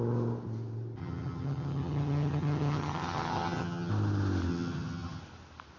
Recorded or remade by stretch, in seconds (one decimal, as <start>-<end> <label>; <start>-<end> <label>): 0.0-1.0 recorded; 1.0-3.9 remade; 3.9-4.5 recorded; 4.5-5.2 remade; 5.2-5.8 recorded